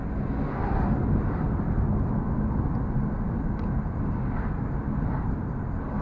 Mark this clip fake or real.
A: real